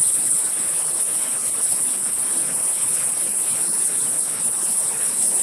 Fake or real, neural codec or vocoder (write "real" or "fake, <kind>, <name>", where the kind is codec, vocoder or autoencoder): fake, codec, HILCodec